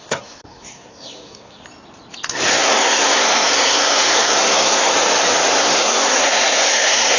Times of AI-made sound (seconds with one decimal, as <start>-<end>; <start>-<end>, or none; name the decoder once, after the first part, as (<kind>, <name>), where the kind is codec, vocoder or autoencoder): 0.0-1.6 (codec, SNAC); 2.5-4.9; 5.6-7.2